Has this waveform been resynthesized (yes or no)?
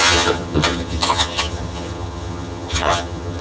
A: yes